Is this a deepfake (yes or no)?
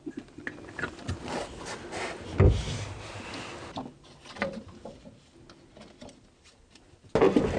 no